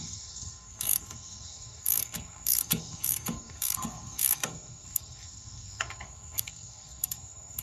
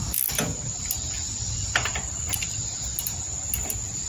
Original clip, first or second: second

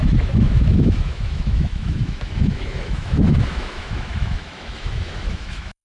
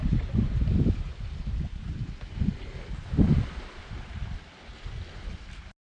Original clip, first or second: second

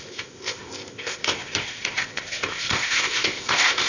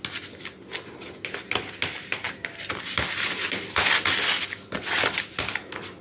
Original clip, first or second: second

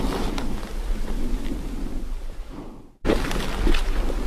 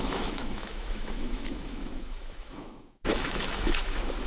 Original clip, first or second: first